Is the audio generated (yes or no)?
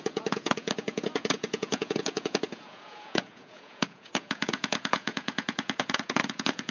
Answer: yes